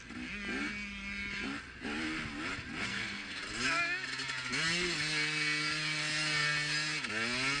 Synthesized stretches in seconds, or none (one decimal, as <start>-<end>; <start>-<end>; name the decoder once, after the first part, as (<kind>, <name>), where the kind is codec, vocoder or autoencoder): 2.9-3.4 (codec, SNAC)